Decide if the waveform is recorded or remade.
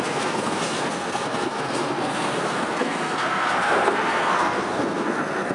remade